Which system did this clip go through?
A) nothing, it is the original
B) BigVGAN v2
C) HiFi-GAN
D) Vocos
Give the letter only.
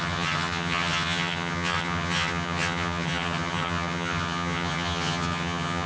C